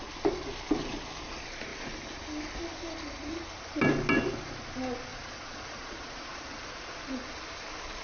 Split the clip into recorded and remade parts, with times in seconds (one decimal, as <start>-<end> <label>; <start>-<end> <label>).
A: 0.0-5.1 recorded; 5.1-6.9 remade; 6.9-8.0 recorded